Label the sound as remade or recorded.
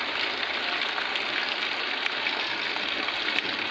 recorded